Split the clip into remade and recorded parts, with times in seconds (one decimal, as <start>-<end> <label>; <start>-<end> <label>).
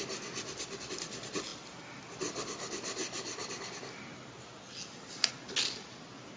0.0-6.4 recorded